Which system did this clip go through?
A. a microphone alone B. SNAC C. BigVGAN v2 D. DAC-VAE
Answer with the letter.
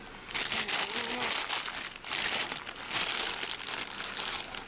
A